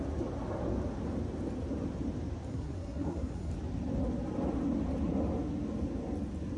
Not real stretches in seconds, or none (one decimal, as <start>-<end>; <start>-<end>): 2.5-3.5